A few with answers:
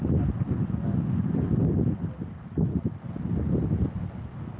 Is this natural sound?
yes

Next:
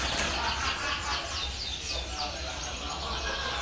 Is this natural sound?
yes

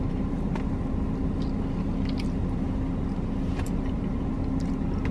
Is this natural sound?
yes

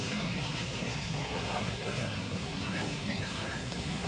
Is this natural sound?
no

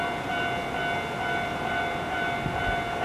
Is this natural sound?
yes